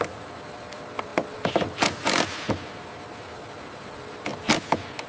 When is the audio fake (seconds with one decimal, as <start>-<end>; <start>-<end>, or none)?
none